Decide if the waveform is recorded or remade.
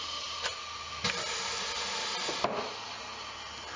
recorded